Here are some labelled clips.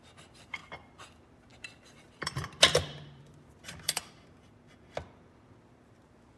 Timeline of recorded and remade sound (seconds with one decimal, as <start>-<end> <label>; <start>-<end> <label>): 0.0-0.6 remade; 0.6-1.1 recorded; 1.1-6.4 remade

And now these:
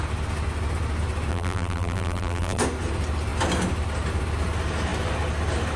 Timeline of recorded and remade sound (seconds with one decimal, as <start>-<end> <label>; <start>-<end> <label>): 0.0-1.3 recorded; 1.3-2.6 remade; 2.6-5.8 recorded

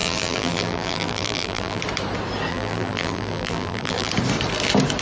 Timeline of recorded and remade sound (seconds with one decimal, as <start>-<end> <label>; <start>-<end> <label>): 0.0-1.8 remade; 1.8-2.5 recorded; 2.5-4.1 remade; 4.1-5.0 recorded